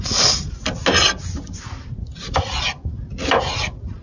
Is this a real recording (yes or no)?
yes